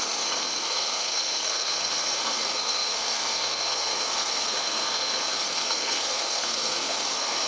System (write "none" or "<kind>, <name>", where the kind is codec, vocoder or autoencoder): codec, SNAC